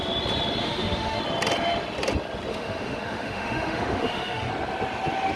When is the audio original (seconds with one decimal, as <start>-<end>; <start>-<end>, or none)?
0.0-0.6; 1.2-2.5; 4.5-5.4